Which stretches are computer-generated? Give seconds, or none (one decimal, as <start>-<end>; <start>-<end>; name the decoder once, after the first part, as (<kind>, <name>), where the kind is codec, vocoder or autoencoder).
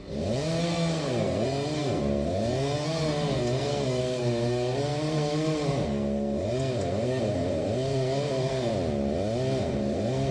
0.0-8.7 (codec, SNAC); 9.6-10.3